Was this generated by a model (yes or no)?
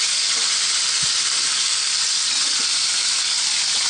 no